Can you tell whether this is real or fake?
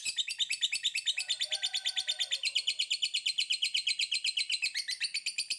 real